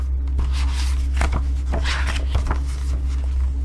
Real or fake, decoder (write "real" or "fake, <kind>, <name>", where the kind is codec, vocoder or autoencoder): real